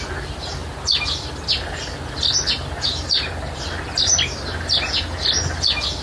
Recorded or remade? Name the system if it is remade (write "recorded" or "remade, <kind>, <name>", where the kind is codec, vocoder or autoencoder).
recorded